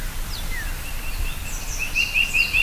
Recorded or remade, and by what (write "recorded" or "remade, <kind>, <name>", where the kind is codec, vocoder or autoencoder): recorded